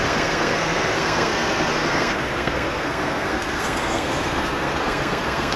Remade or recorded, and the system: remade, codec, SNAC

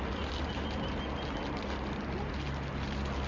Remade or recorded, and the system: recorded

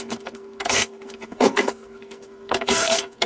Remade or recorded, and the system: remade, codec, SNAC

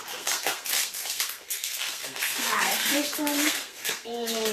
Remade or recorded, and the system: remade, codec, SNAC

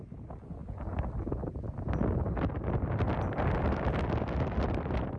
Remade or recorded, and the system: recorded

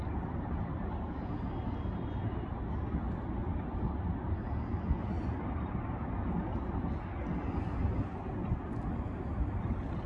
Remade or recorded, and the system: recorded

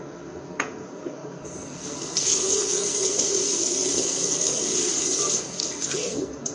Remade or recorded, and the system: remade, codec, SNAC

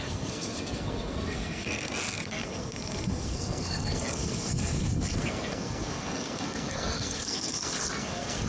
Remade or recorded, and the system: remade, codec, SNAC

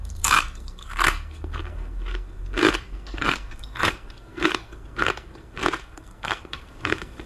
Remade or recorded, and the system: remade, codec, SNAC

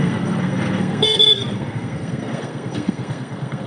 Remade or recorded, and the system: remade, codec, SNAC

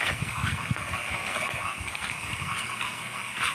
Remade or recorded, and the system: remade, codec, SNAC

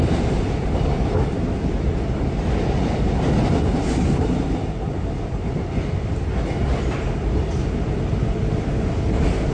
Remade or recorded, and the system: recorded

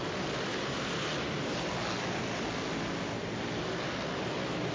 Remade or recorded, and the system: recorded